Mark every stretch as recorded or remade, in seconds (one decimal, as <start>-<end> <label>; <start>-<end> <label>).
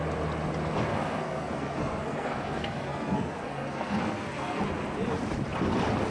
0.0-0.9 recorded; 0.9-4.6 remade; 4.6-6.1 recorded